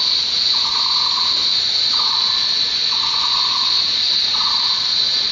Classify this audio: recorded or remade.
remade